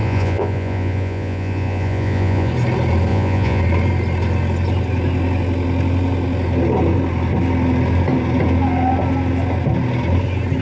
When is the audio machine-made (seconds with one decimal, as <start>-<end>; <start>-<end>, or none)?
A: 0.0-2.5; 3.1-3.6